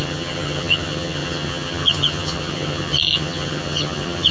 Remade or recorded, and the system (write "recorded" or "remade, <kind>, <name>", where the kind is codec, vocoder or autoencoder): remade, vocoder, HiFi-GAN